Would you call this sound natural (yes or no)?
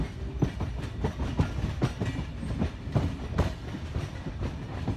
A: yes